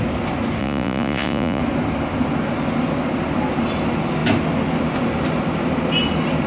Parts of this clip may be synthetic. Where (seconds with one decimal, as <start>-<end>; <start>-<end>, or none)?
0.6-1.6